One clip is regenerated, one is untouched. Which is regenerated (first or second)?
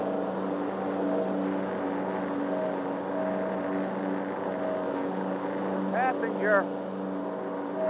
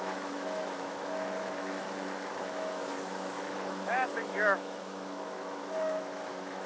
second